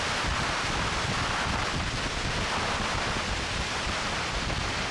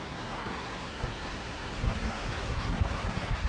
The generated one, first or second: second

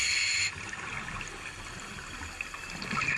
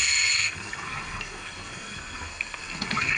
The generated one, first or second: second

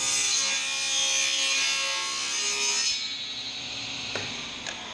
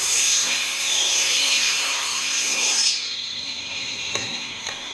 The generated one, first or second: second